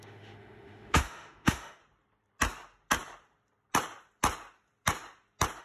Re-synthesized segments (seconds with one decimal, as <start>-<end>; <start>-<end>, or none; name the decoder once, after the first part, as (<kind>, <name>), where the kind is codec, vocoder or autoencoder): 0.0-1.8 (autoencoder, DAC-VAE)